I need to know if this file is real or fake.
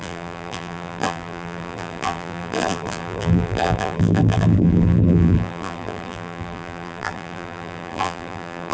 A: fake